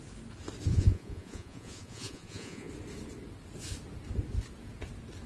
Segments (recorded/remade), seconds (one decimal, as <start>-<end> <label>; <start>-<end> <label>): 0.0-0.7 recorded; 0.7-2.7 remade; 2.7-5.3 recorded